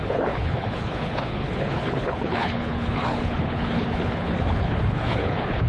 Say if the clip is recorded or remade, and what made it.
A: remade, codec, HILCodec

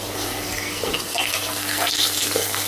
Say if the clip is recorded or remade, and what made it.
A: remade, codec, SNAC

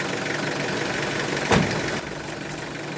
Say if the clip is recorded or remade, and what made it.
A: recorded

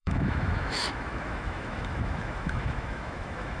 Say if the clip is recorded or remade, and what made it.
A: remade, autoencoder, DAC-VAE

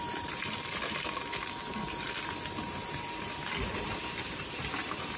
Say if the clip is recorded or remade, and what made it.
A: recorded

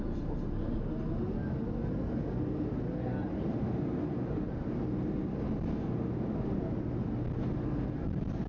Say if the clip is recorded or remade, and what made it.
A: recorded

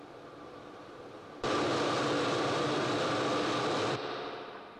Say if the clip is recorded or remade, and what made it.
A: recorded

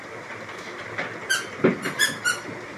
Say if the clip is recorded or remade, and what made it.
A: recorded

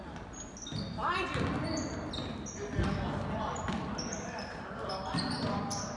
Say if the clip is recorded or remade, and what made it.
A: recorded